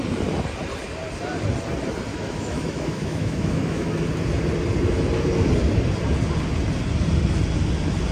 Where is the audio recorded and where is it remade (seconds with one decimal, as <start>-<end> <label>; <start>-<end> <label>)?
0.0-2.1 recorded; 2.1-3.9 remade; 3.9-8.1 recorded